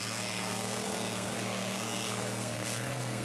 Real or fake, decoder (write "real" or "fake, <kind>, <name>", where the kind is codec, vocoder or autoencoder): fake, codec, SNAC